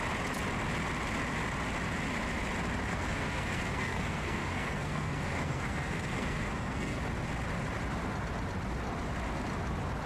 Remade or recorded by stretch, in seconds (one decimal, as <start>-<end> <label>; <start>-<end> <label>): 0.0-2.9 recorded; 2.9-7.0 remade; 7.0-10.1 recorded